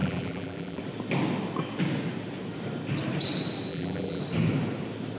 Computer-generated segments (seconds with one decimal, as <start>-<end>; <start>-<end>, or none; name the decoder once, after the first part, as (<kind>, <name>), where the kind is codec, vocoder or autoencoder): 0.0-0.8 (vocoder, BigVGAN v2); 3.7-4.2